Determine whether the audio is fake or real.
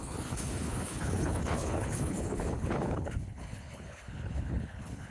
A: fake